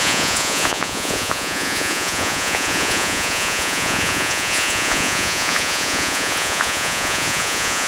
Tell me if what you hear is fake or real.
fake